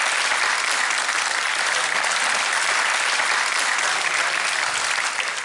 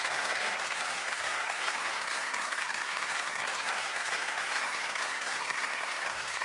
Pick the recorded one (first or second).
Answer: first